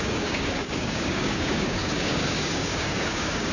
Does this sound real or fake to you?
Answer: fake